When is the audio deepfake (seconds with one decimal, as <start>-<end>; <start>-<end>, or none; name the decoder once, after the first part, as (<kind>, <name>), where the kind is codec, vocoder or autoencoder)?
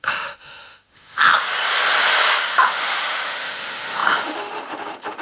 0.0-1.2 (autoencoder, DAC-VAE); 2.4-5.2